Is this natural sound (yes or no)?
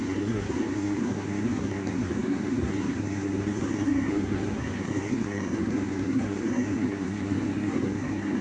no